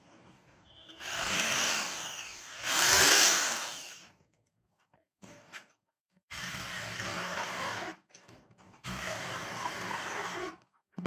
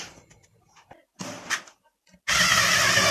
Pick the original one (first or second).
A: second